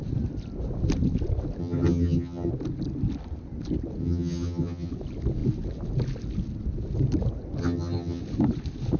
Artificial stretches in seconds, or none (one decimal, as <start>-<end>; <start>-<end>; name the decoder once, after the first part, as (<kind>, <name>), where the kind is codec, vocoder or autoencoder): 1.6-2.5 (vocoder, HiFi-GAN); 4.0-4.9; 7.6-8.2